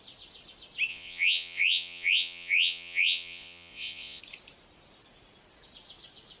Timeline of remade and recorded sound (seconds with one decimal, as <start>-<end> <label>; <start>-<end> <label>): 0.0-0.9 recorded; 0.9-4.2 remade; 4.2-6.4 recorded